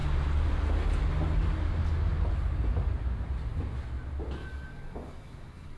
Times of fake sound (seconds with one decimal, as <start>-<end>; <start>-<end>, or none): 4.4-5.8